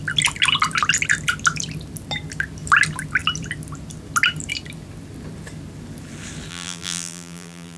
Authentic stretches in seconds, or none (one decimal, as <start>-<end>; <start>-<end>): 0.0-6.5